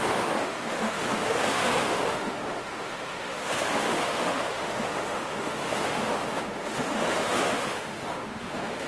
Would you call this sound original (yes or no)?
no